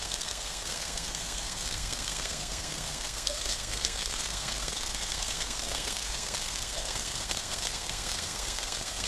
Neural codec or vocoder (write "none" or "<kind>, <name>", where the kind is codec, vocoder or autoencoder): codec, SNAC